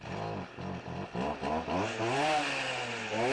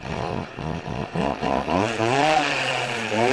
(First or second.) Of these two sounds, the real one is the first